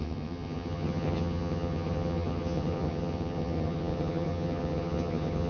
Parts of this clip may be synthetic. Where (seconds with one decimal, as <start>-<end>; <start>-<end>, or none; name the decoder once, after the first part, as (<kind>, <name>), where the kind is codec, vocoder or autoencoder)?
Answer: 0.0-5.5 (vocoder, HiFi-GAN)